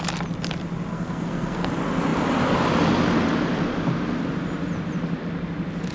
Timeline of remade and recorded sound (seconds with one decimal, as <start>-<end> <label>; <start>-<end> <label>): 0.0-0.9 recorded; 0.9-1.7 remade; 1.7-5.9 recorded